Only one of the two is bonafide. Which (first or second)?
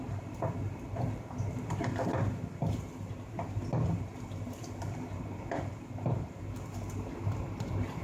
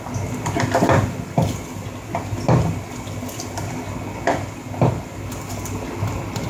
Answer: second